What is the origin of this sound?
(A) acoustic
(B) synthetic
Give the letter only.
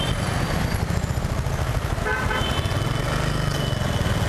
A